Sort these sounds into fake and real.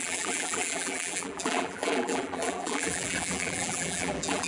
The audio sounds fake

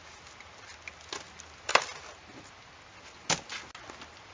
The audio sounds real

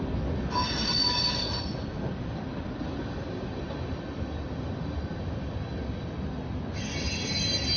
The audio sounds real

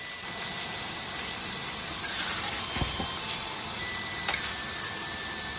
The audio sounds real